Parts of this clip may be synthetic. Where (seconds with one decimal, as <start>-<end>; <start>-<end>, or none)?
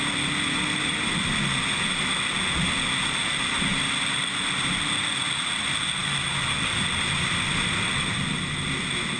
none